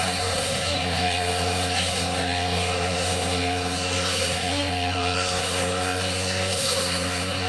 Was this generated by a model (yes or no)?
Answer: yes